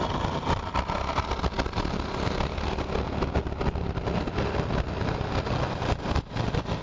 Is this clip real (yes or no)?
yes